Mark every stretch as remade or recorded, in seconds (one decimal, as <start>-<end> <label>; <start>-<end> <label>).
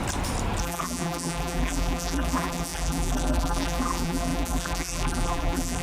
0.0-0.6 recorded; 0.6-5.8 remade